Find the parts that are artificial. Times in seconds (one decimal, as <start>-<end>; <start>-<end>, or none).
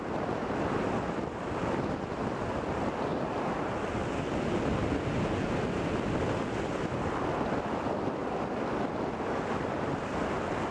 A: 8.2-9.9